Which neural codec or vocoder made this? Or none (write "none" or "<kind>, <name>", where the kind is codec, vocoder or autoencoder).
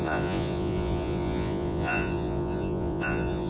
vocoder, Vocos